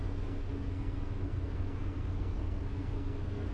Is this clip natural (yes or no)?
no